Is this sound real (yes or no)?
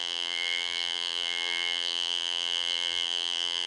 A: no